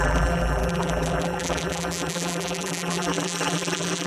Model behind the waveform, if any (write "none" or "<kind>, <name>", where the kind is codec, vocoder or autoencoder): vocoder, BigVGAN v2